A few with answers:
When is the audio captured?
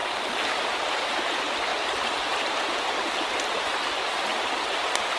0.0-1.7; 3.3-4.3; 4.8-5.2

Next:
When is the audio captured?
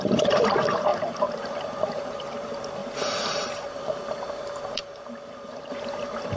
2.8-3.3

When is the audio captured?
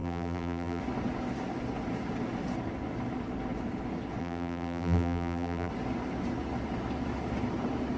0.8-4.2; 5.7-8.0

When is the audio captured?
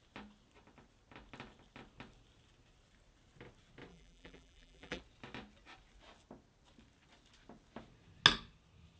0.0-3.9; 5.0-9.0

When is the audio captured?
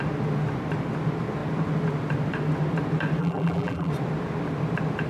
0.0-3.2; 3.9-5.1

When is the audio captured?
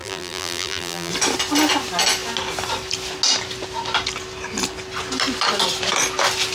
1.1-6.5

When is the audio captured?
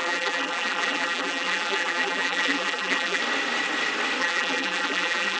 3.2-4.2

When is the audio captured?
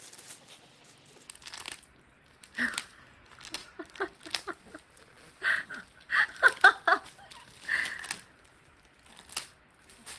0.0-3.6; 5.3-10.2